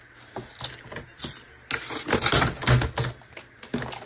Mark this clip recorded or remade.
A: recorded